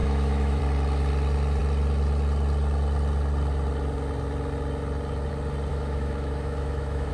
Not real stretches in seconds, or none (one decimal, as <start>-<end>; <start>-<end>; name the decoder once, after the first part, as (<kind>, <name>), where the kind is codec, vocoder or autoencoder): 0.0-0.6 (autoencoder, DAC-VAE); 5.7-7.1